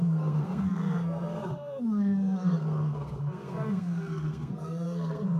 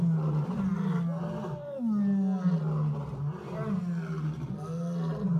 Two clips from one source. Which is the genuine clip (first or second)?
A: second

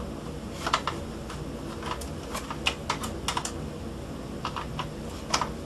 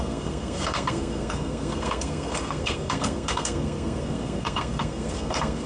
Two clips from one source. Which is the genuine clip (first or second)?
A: first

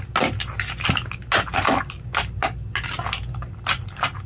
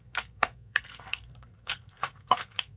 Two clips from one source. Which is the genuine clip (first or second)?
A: first